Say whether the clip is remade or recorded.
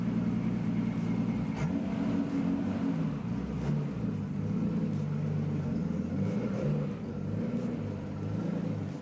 recorded